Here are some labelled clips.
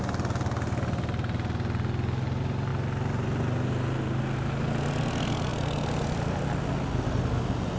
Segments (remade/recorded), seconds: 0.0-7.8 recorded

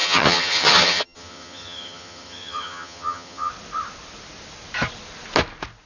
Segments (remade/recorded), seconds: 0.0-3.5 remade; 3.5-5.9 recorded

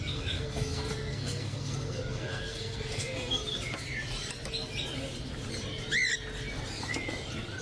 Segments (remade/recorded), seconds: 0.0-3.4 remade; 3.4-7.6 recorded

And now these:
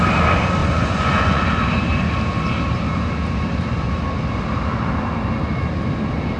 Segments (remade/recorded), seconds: 0.0-0.6 recorded; 0.6-1.4 remade; 1.4-6.4 recorded